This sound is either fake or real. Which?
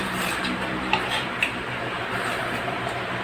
fake